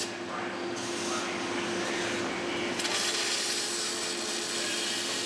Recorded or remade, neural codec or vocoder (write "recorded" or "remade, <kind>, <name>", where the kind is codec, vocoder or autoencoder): recorded